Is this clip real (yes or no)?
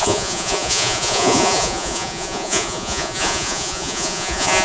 no